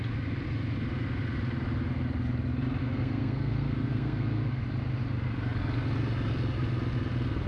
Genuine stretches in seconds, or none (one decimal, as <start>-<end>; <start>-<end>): 0.0-2.8; 4.6-7.5